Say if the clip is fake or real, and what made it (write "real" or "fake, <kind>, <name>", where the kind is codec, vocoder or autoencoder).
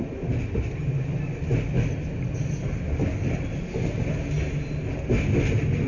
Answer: real